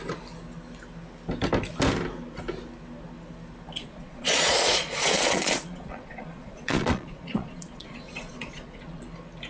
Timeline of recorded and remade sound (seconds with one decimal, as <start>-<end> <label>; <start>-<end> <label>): 0.0-3.8 recorded; 3.8-9.0 remade; 9.0-9.5 recorded